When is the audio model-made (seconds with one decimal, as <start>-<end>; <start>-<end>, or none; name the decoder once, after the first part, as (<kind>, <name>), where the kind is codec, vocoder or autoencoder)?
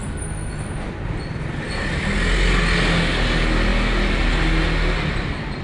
none